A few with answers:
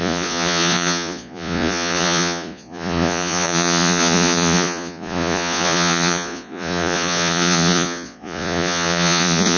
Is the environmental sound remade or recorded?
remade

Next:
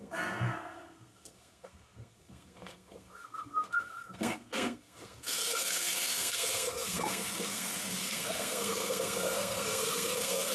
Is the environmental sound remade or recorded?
remade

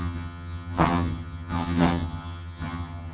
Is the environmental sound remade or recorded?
remade